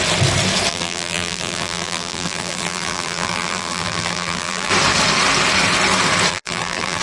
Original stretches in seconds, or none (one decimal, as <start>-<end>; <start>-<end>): 0.0-0.7; 4.7-6.3